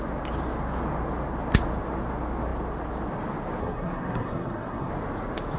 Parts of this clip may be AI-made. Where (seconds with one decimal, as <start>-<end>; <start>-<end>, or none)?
3.6-4.9